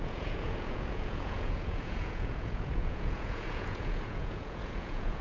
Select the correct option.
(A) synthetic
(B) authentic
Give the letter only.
A